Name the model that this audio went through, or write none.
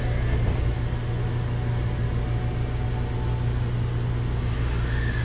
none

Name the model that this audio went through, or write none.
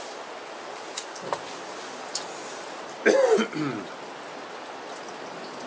none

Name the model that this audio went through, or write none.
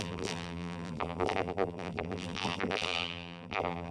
vocoder, BigVGAN v2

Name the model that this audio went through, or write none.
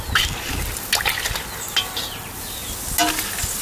none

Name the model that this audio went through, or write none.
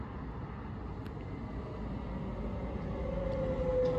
none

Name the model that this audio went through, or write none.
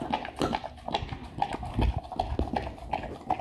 none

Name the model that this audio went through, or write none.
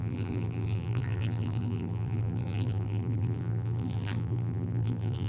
vocoder, BigVGAN v2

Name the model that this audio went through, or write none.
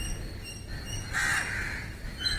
none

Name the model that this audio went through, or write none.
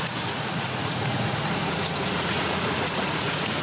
vocoder, Vocos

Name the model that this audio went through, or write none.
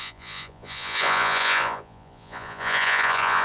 vocoder, Vocos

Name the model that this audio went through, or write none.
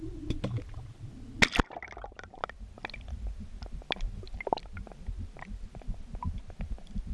none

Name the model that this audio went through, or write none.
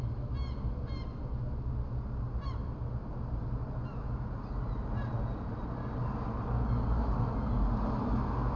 none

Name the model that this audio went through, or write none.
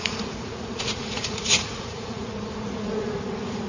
vocoder, Vocos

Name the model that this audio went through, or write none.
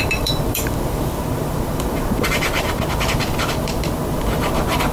vocoder, BigVGAN v2